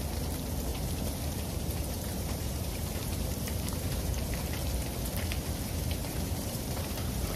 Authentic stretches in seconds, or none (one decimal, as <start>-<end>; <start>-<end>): 0.0-0.7; 4.3-6.0